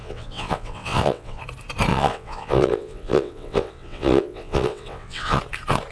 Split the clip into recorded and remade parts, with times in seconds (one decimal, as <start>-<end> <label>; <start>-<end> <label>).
0.0-1.4 remade; 1.4-1.9 recorded; 1.9-5.4 remade; 5.4-5.9 recorded